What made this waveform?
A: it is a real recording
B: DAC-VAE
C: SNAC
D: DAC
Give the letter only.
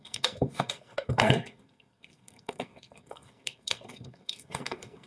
C